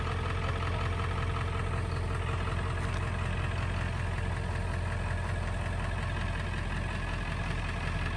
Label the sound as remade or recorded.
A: recorded